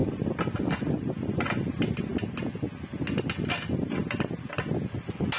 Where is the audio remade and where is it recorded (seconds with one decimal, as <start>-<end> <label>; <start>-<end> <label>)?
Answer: 0.0-5.4 recorded